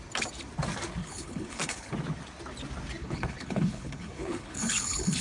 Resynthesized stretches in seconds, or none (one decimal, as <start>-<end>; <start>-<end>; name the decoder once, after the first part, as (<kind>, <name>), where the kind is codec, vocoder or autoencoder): 1.0-1.9 (codec, HILCodec); 3.0-5.2